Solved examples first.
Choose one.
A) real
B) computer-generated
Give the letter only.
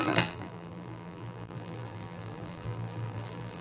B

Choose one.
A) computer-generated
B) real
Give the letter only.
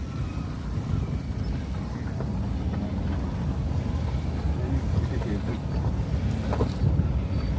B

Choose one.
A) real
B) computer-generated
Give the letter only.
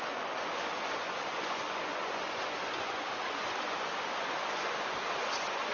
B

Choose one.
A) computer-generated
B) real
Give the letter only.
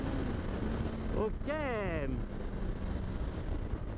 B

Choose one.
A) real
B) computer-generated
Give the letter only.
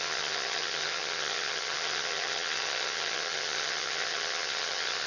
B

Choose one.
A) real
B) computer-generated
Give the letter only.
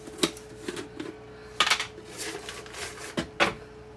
A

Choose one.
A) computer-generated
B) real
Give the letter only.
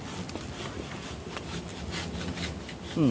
B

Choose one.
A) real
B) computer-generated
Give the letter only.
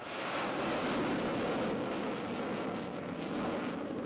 A